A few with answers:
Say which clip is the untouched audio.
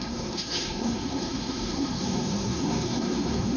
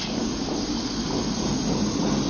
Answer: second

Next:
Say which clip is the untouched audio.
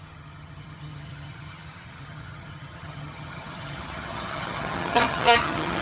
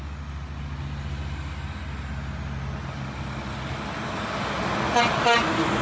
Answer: second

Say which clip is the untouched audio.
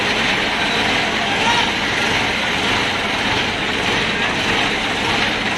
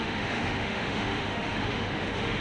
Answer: first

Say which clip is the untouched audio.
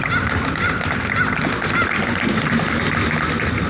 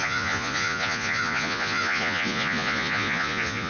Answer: first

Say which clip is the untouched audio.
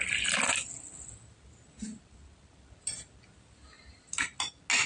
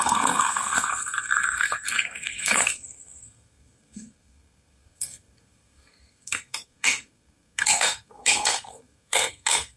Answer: first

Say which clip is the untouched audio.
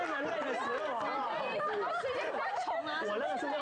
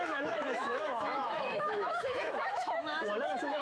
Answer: first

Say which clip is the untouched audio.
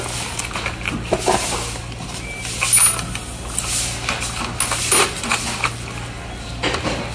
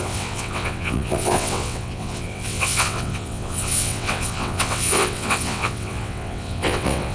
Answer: first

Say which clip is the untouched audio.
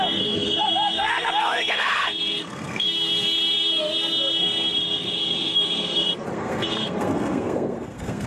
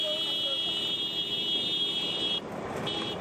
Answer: second